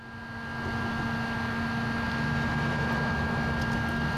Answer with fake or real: real